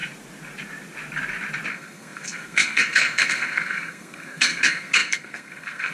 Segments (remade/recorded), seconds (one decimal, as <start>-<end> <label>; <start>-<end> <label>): 0.0-1.7 recorded; 1.7-5.9 remade